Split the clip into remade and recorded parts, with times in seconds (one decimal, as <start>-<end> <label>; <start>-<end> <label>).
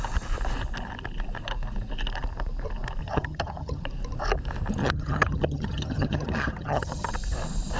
0.0-3.0 recorded; 3.0-3.8 remade; 3.8-4.8 recorded; 4.8-7.1 remade; 7.1-7.8 recorded